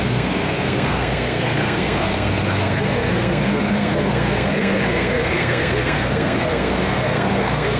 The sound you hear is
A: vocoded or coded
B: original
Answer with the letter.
A